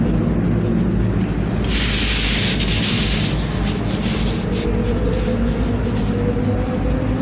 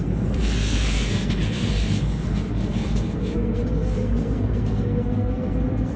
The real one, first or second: first